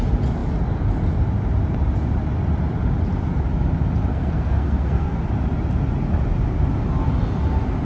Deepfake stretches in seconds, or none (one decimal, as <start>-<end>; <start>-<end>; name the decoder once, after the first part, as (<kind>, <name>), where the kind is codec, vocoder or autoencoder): 4.1-5.2 (codec, SNAC)